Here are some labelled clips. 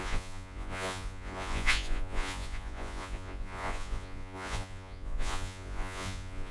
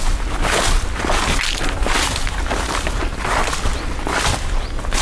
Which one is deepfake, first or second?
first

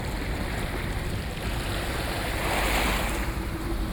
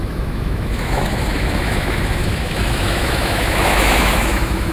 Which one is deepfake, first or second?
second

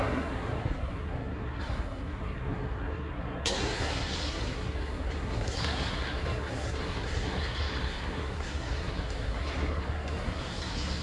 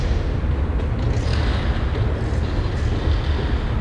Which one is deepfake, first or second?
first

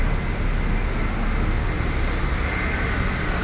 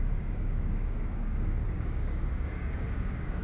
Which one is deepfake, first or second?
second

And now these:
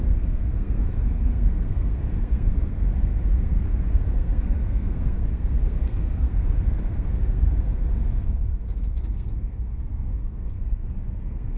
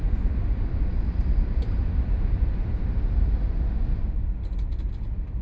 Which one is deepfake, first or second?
first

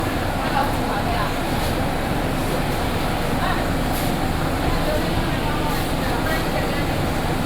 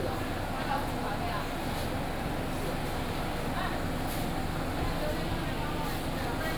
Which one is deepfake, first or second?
first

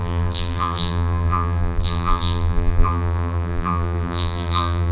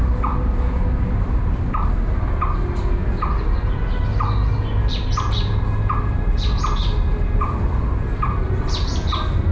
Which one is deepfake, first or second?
first